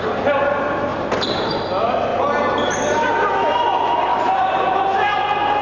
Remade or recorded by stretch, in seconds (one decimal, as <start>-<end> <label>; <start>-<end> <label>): 0.0-4.1 recorded; 4.1-4.8 remade; 4.8-5.6 recorded